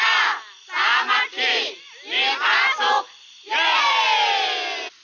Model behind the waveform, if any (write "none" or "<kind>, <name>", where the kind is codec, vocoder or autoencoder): none